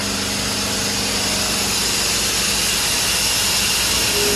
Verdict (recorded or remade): recorded